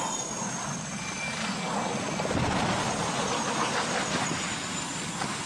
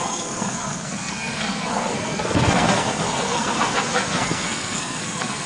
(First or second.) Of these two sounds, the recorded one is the first